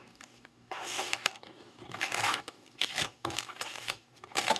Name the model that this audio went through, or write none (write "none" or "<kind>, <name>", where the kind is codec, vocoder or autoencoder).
codec, DAC